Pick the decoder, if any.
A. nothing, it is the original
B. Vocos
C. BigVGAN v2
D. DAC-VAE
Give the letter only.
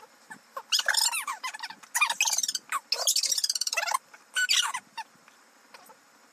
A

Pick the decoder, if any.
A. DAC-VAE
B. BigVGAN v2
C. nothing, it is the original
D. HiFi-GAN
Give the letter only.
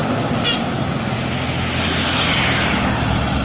C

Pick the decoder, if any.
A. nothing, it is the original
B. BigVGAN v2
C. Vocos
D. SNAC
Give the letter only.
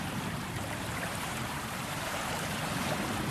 B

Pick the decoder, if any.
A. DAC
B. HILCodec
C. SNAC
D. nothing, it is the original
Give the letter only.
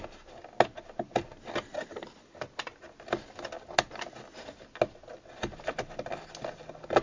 D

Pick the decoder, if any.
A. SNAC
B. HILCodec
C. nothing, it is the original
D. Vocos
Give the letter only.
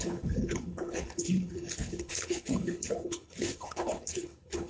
B